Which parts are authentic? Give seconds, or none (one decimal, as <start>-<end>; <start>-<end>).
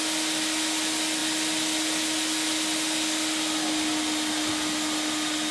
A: 0.0-5.5